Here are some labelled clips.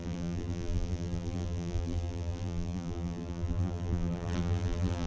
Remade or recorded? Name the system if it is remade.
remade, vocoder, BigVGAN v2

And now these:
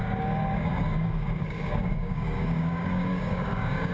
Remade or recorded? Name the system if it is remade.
remade, codec, DAC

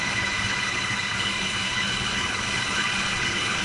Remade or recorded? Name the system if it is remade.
remade, codec, HILCodec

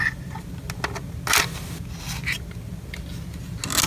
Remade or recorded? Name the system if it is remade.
recorded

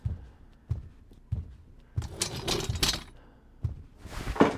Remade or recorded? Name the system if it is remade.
recorded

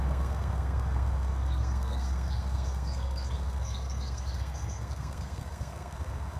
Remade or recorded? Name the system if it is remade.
remade, codec, SNAC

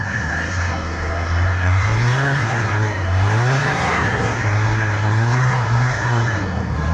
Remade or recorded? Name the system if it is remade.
remade, codec, SNAC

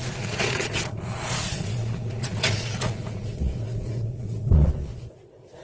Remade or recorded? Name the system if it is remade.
remade, vocoder, Vocos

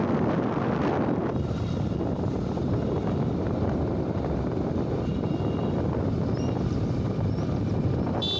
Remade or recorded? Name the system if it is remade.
recorded